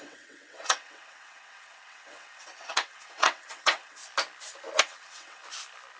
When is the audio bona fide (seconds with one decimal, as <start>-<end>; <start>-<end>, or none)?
4.0-4.8; 5.4-6.0